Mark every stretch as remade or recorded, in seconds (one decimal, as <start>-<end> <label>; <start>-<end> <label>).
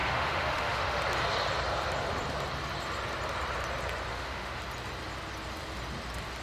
0.0-1.0 remade; 1.0-4.1 recorded; 4.1-4.6 remade; 4.6-6.4 recorded